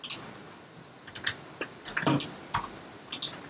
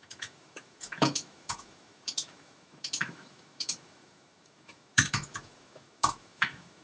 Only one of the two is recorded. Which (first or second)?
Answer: first